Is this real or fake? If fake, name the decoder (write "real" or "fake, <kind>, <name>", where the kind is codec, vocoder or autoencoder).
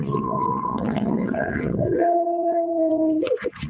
fake, vocoder, WaveNeXt